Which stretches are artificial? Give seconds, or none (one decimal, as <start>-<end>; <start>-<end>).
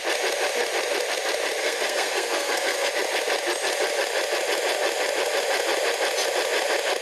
1.6-2.9